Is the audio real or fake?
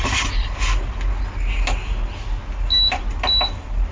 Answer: real